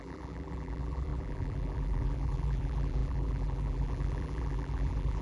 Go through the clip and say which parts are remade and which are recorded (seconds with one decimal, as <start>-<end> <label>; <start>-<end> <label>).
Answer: 0.0-5.2 remade